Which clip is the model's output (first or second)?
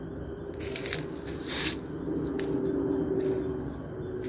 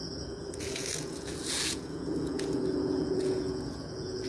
second